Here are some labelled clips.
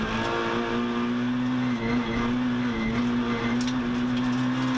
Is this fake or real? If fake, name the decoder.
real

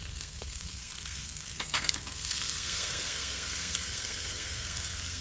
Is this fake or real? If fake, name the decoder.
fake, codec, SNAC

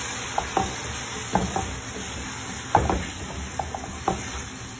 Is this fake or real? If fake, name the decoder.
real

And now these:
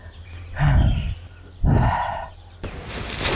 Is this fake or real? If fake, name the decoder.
real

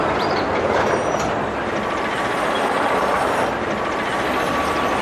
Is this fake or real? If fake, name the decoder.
real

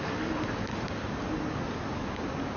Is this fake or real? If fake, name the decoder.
real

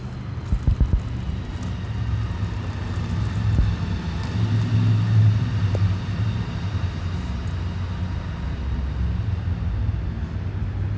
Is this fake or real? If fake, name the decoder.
real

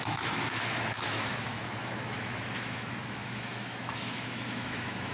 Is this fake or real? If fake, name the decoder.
fake, autoencoder, DAC-VAE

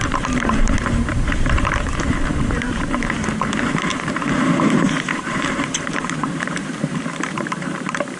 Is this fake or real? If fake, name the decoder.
fake, vocoder, BigVGAN v2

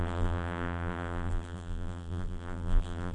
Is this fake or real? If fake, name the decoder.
fake, vocoder, BigVGAN v2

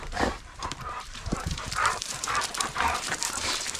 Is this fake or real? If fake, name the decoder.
fake, vocoder, BigVGAN v2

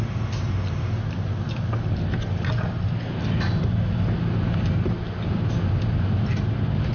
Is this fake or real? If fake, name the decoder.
real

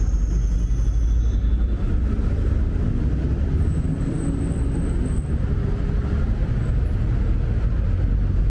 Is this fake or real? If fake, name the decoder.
real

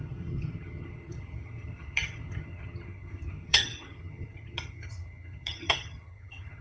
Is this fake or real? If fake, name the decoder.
fake, vocoder, HiFi-GAN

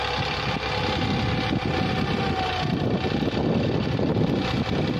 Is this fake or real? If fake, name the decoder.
real